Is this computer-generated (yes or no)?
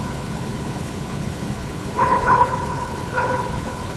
yes